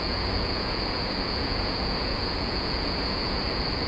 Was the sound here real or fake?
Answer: fake